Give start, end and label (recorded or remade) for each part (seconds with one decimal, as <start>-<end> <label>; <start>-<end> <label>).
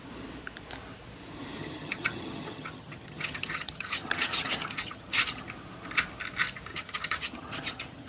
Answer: 0.0-1.6 recorded; 1.6-5.5 remade; 5.5-6.7 recorded; 6.7-8.1 remade